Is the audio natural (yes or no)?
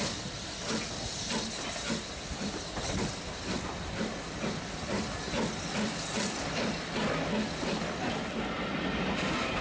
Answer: yes